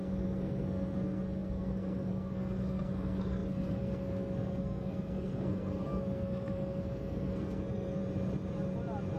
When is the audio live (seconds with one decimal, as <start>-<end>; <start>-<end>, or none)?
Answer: 8.0-9.2